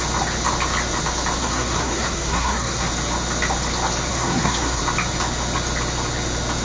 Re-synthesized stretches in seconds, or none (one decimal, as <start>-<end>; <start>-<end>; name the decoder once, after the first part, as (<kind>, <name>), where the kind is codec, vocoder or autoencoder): 1.4-2.9 (codec, SNAC); 4.1-4.8